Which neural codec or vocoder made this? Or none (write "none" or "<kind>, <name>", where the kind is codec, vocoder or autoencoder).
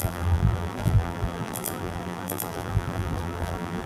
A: vocoder, BigVGAN v2